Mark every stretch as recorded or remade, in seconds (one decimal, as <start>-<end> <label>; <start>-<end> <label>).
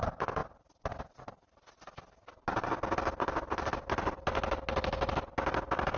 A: 0.0-6.0 recorded